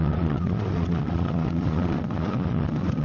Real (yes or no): no